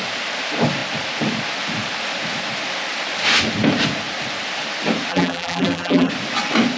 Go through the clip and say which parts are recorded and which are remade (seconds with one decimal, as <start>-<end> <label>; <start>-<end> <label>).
0.0-5.1 recorded; 5.1-6.1 remade; 6.1-6.8 recorded